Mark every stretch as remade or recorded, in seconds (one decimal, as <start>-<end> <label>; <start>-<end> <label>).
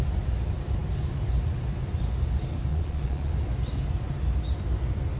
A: 0.0-2.7 recorded; 2.7-3.3 remade; 3.3-5.2 recorded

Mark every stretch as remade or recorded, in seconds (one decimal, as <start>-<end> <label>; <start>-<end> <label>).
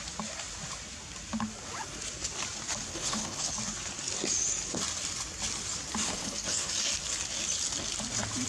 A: 0.0-2.9 recorded; 2.9-3.5 remade; 3.5-6.0 recorded; 6.0-6.7 remade; 6.7-8.5 recorded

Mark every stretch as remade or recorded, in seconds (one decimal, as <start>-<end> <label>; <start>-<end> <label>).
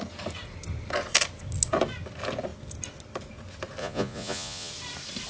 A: 0.0-3.8 recorded; 3.8-4.7 remade; 4.7-5.3 recorded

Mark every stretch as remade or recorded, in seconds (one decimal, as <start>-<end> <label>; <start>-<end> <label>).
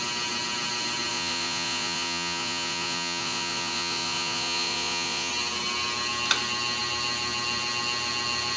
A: 0.0-1.1 recorded; 1.1-5.3 remade; 5.3-8.6 recorded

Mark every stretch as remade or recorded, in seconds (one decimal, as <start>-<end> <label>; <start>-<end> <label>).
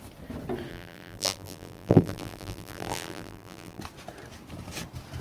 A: 0.0-0.7 recorded; 0.7-3.8 remade; 3.8-5.2 recorded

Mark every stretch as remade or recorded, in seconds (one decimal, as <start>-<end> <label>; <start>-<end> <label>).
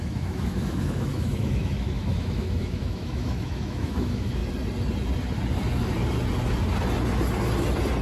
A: 0.0-4.4 remade; 4.4-8.0 recorded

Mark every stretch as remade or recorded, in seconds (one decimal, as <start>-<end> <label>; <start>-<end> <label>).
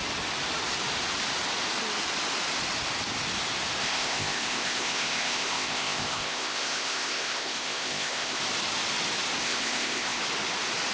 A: 0.0-3.8 recorded; 3.8-8.4 remade; 8.4-9.4 recorded; 9.4-10.2 remade; 10.2-10.9 recorded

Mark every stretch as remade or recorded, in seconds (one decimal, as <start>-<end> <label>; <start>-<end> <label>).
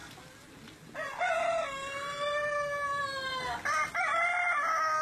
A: 0.0-5.0 recorded